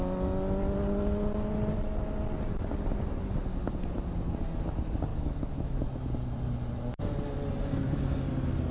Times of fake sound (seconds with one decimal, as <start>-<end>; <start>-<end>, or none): 5.1-5.8